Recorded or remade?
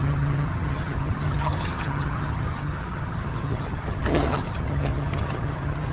remade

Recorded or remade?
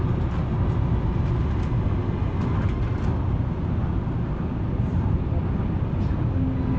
recorded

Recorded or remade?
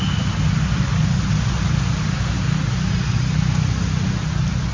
recorded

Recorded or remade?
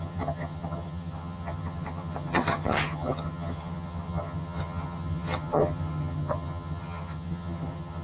remade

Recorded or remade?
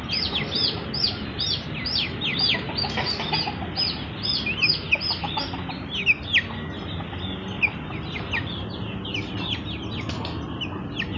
recorded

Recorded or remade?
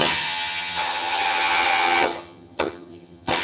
remade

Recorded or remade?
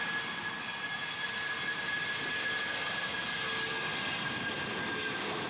recorded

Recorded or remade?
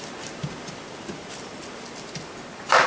recorded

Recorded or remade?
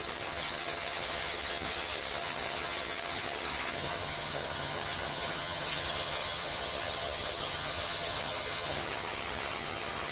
remade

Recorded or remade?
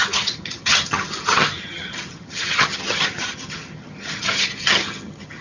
remade